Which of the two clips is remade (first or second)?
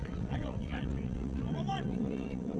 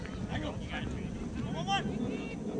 first